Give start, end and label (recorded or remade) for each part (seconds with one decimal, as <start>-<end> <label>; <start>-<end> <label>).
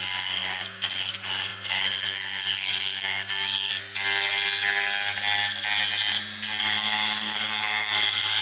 0.0-3.7 remade; 3.7-6.6 recorded; 6.6-8.4 remade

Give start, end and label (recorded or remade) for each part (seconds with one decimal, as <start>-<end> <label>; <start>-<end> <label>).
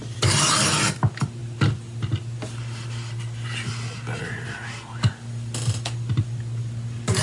0.0-7.2 recorded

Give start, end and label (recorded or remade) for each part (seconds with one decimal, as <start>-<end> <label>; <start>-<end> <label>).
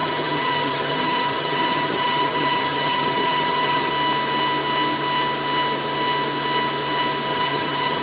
0.0-3.9 remade; 3.9-7.3 recorded; 7.3-8.0 remade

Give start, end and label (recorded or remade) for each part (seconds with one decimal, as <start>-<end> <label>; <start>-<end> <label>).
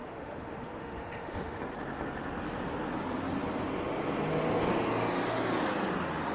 0.0-1.6 remade; 1.6-6.3 recorded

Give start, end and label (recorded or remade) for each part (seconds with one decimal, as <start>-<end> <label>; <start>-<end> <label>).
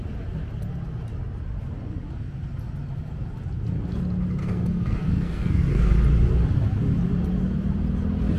0.0-4.4 recorded; 4.4-5.9 remade; 5.9-8.4 recorded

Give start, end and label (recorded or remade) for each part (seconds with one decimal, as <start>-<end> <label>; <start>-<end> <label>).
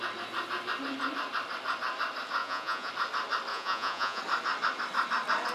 0.0-2.4 recorded; 2.4-2.9 remade; 2.9-3.5 recorded; 3.5-4.2 remade; 4.2-5.5 recorded